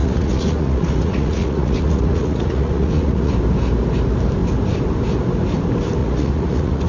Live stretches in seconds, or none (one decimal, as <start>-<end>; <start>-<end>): 3.3-6.0